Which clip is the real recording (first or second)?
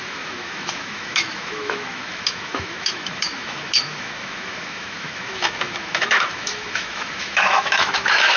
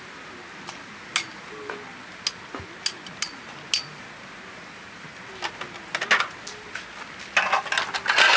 second